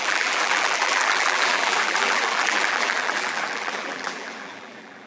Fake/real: fake